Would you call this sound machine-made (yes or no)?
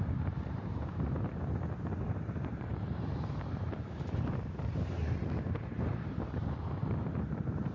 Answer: yes